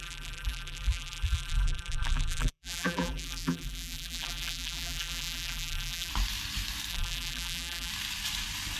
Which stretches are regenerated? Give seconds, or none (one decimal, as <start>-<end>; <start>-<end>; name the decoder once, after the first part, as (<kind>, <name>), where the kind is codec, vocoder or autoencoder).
0.0-6.1 (vocoder, BigVGAN v2); 6.9-7.9

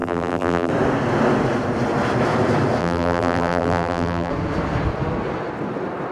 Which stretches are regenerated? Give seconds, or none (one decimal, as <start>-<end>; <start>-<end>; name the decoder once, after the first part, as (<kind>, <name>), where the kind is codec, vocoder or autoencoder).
0.0-0.7 (vocoder, BigVGAN v2); 2.8-4.3

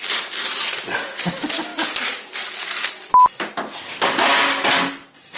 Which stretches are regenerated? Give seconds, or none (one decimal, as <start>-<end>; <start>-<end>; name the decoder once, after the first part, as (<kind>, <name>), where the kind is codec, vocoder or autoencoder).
none

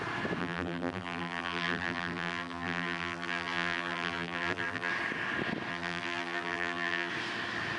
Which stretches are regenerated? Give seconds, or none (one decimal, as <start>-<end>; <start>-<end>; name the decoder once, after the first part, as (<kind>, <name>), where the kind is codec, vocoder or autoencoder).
0.4-4.9 (vocoder, BigVGAN v2); 5.7-7.1

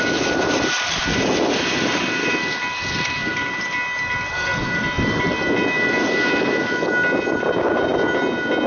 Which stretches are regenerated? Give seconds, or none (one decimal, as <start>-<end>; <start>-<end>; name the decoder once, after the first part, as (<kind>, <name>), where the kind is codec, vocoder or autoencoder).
none